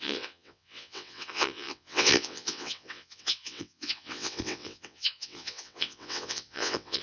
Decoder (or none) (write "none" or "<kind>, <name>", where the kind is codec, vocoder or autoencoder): vocoder, WaveNeXt